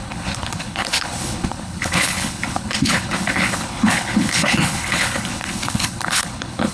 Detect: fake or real fake